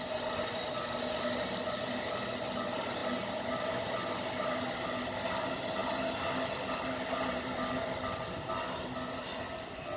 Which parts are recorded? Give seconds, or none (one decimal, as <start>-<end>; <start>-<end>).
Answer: 0.0-10.0